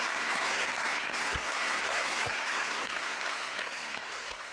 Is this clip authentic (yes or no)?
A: no